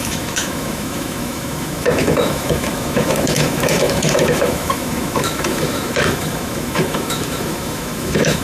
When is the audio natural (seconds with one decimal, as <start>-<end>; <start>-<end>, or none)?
none